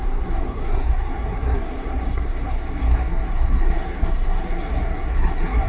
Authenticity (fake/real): fake